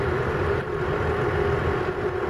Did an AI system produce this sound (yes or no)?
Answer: no